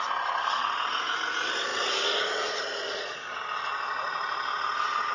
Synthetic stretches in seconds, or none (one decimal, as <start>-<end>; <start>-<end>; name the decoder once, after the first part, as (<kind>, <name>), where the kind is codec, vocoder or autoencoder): none